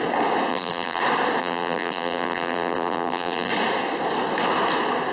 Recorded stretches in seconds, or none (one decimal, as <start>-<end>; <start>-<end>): 0.0-0.5; 1.0-1.4; 3.5-5.1